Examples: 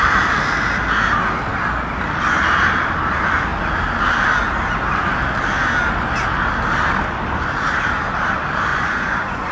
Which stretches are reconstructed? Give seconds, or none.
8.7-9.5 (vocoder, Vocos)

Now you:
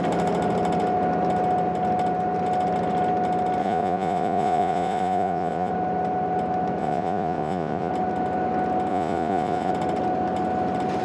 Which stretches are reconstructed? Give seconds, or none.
3.6-5.7 (vocoder, Vocos); 6.8-7.9; 8.9-9.7

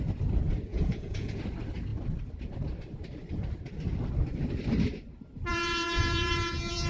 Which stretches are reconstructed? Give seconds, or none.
0.7-1.4 (vocoder, Vocos); 5.5-6.9

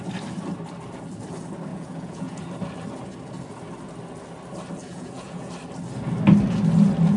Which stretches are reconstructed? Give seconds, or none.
1.7-2.4 (vocoder, Vocos); 4.8-5.5

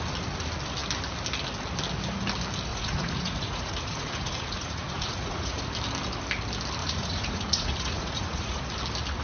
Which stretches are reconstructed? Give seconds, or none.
2.7-5.6 (vocoder, Vocos); 6.8-8.6